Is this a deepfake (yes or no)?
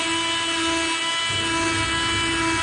no